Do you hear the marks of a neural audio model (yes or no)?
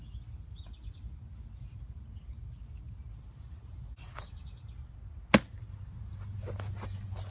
no